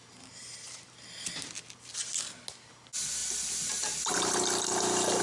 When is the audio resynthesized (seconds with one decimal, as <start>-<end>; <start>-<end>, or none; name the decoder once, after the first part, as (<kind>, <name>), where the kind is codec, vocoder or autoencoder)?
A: none